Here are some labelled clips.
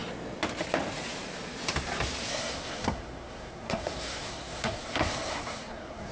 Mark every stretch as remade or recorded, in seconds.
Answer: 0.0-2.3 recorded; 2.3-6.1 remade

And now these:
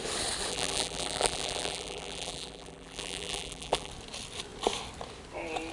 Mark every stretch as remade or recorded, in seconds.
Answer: 0.0-0.5 recorded; 0.5-3.9 remade; 3.9-5.7 recorded

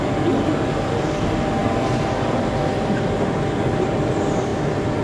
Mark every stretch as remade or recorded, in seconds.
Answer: 0.0-5.0 recorded